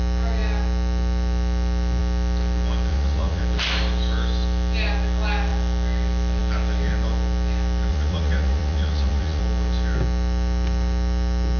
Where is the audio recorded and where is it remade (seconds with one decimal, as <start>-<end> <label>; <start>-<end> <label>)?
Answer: 0.0-2.9 recorded; 2.9-3.4 remade; 3.4-7.9 recorded; 7.9-9.4 remade; 9.4-11.6 recorded